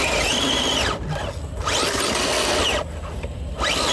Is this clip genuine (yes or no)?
yes